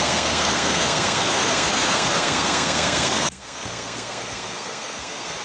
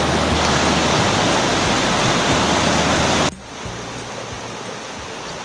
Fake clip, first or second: first